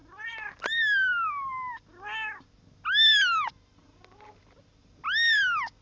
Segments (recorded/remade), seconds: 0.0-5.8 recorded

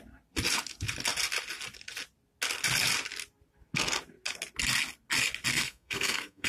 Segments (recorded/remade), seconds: 0.0-5.5 recorded; 5.5-6.5 remade

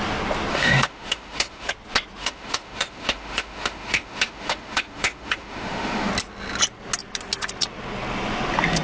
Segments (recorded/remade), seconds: 0.0-0.5 recorded; 0.5-1.7 remade; 1.7-2.2 recorded; 2.2-6.1 remade; 6.1-8.8 recorded

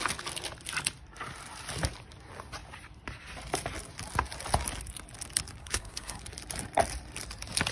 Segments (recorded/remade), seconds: 0.0-5.6 recorded; 5.6-6.2 remade; 6.2-7.7 recorded